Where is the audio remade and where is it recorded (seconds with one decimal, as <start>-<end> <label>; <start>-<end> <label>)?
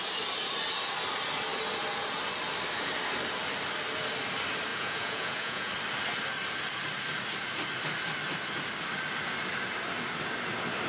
0.0-4.7 recorded; 4.7-5.7 remade; 5.7-10.9 recorded